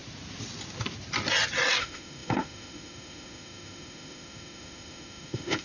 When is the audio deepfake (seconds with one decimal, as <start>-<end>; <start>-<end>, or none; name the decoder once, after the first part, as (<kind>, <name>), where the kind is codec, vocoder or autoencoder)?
1.8-5.6 (autoencoder, DAC-VAE)